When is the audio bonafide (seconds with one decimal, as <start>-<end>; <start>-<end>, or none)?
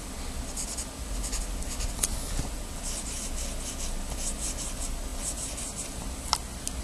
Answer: 0.0-5.1